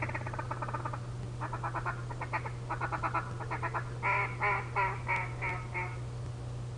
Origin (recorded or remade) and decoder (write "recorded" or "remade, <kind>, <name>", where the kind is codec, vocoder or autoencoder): recorded